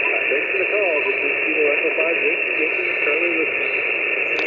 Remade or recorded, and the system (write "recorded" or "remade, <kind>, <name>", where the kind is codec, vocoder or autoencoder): recorded